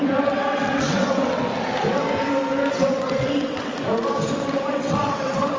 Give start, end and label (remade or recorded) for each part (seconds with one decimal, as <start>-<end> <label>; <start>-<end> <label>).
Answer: 0.0-1.5 remade; 1.5-2.7 recorded; 2.7-3.7 remade; 3.7-4.7 recorded; 4.7-5.6 remade